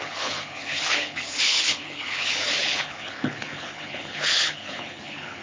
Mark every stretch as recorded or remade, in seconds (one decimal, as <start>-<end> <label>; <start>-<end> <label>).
0.0-5.4 remade